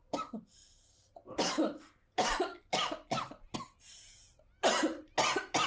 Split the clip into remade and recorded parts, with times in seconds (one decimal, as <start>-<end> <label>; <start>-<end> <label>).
0.0-5.7 recorded